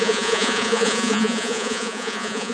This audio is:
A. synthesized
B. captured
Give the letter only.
A